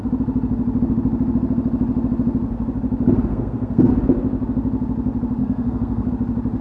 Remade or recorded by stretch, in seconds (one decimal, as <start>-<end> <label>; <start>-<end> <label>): 0.0-3.3 recorded; 3.3-3.9 remade; 3.9-5.4 recorded; 5.4-6.1 remade; 6.1-6.6 recorded